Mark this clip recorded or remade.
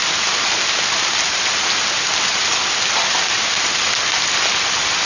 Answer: recorded